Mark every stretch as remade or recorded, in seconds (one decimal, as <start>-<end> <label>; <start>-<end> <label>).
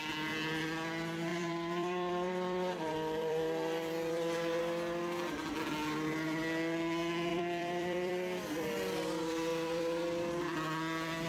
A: 0.0-1.3 recorded; 1.3-4.6 remade; 4.6-7.3 recorded; 7.3-8.1 remade; 8.1-9.5 recorded; 9.5-10.4 remade; 10.4-11.3 recorded